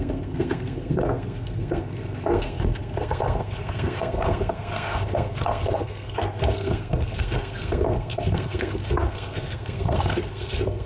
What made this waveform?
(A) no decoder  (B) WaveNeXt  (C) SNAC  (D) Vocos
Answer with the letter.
C